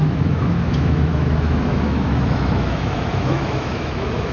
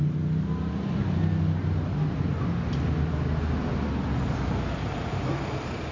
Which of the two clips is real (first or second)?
second